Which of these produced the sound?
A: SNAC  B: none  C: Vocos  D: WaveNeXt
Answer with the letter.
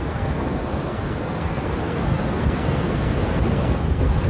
A